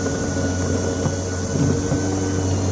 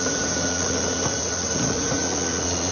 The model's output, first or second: second